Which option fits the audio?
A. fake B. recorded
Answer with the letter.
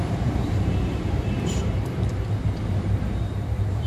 A